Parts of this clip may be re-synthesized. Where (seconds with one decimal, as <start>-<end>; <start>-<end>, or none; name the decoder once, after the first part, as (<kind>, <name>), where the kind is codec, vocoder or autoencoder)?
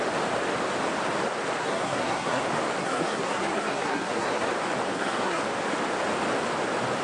1.6-2.4 (codec, SNAC); 2.8-4.5; 4.9-5.4